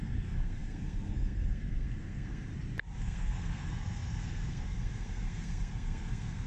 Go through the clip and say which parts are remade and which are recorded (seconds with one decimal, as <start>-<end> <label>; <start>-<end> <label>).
0.0-2.5 remade; 2.5-3.0 recorded; 3.0-6.5 remade